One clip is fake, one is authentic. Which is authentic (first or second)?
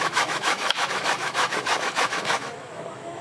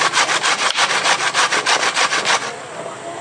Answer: second